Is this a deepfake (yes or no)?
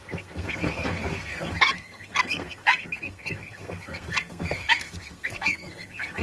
yes